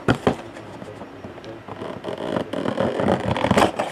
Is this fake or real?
real